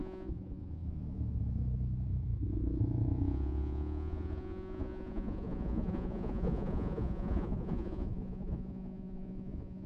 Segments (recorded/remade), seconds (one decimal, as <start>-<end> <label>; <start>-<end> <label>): 0.0-9.9 remade